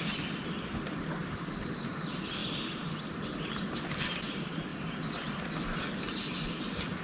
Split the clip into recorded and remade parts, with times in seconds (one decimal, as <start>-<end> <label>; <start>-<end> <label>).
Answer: 0.0-7.0 recorded